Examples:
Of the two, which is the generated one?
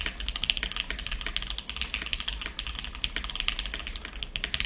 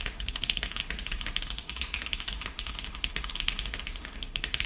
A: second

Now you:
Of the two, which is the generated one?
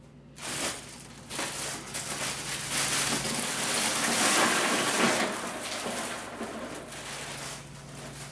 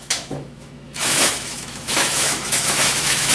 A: second